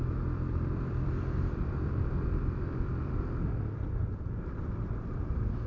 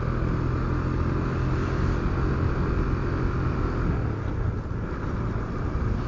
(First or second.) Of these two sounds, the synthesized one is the first